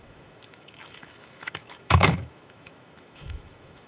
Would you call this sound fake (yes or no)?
yes